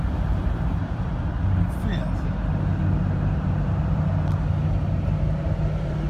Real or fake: real